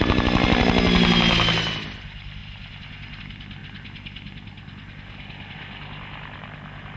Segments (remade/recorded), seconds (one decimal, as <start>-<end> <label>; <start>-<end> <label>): 0.0-7.0 recorded

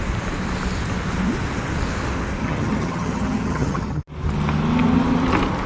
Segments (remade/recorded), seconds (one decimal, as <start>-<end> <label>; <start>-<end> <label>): 0.0-2.4 recorded; 2.4-4.0 remade; 4.0-5.7 recorded

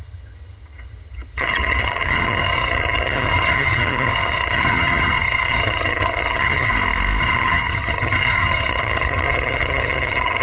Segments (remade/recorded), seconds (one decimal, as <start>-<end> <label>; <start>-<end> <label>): 0.0-6.7 remade; 6.7-7.2 recorded; 7.2-10.4 remade

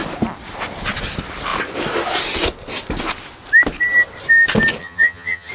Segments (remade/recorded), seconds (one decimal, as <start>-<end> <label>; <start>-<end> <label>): 0.0-4.8 recorded; 4.8-5.5 remade

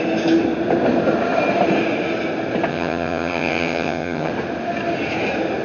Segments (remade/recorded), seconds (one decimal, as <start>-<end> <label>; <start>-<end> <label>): 0.0-2.7 recorded; 2.7-4.3 remade; 4.3-5.6 recorded

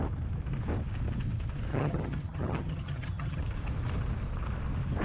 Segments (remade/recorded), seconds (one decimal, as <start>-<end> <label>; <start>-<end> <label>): 0.0-1.7 recorded; 1.7-3.4 remade; 3.4-5.0 recorded

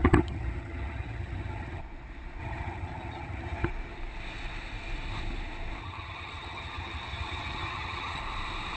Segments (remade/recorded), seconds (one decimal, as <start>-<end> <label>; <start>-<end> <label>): 0.0-1.8 remade; 1.8-2.4 recorded; 2.4-3.7 remade; 3.7-5.8 recorded; 5.8-8.2 remade; 8.2-8.8 recorded

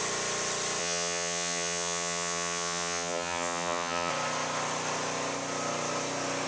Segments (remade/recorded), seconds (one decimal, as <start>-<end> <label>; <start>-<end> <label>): 0.0-0.8 recorded; 0.8-4.1 remade; 4.1-6.5 recorded